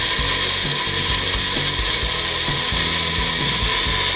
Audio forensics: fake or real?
real